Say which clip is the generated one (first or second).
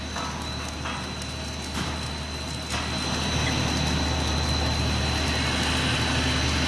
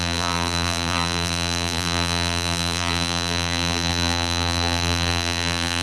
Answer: second